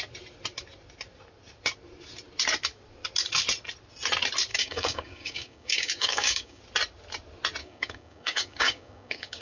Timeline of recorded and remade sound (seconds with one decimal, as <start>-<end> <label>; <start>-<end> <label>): 0.0-4.5 recorded; 4.5-6.6 remade; 6.6-7.6 recorded; 7.6-9.4 remade